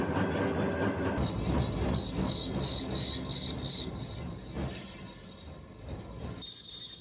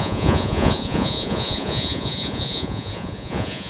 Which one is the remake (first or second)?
second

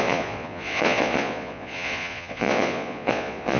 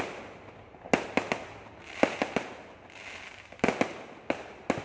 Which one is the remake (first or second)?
first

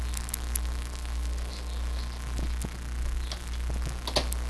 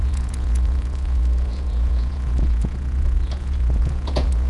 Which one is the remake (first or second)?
second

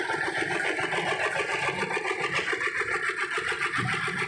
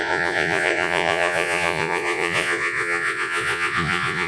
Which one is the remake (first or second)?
second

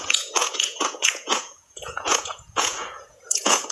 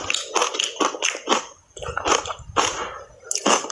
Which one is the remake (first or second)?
first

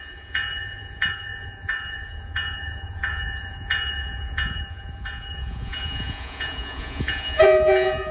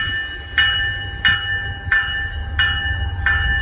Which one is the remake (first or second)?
first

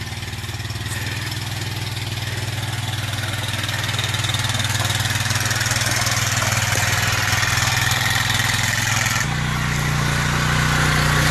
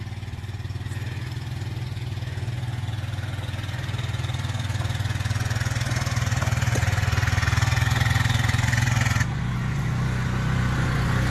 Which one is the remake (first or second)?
second